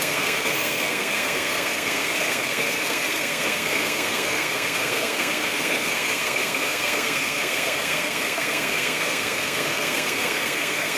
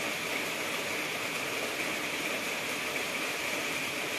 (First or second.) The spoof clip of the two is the first